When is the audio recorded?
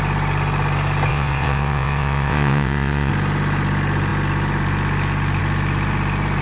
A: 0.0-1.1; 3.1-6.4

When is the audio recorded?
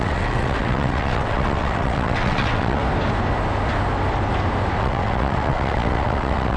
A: 2.8-4.8